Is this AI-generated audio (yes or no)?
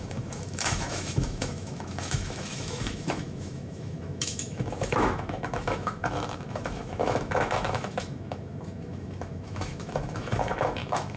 yes